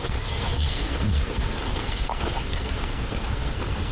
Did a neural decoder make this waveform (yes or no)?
yes